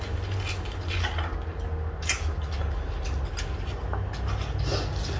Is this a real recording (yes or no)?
yes